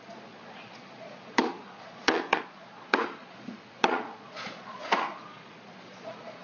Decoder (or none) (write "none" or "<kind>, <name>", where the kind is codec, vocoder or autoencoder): vocoder, Vocos